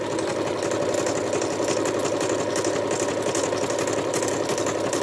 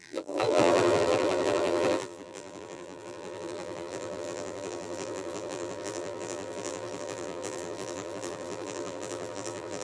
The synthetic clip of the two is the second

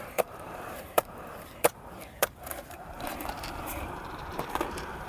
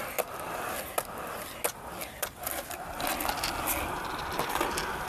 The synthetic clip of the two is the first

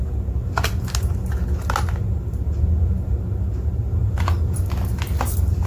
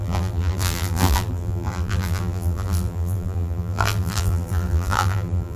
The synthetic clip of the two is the second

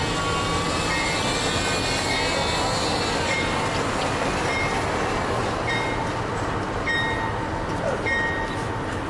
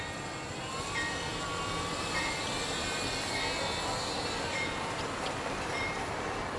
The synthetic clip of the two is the second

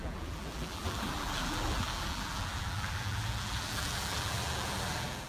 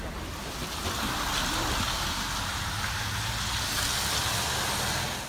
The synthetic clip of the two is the first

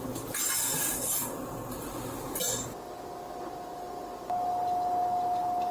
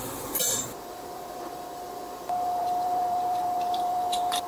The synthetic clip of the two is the second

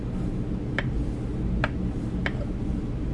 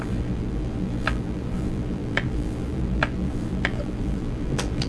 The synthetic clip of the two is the second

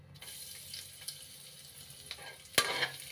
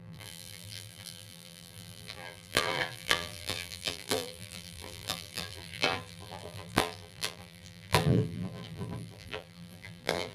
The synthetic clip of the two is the second